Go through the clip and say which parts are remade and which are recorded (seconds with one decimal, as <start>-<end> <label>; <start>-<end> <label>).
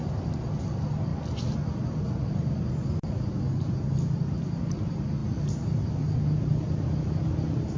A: 0.0-7.8 recorded